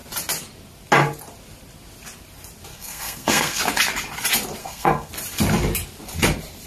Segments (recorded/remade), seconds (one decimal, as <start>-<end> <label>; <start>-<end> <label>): 0.0-2.7 recorded; 2.7-3.6 remade; 3.6-4.6 recorded; 4.6-5.1 remade; 5.1-6.7 recorded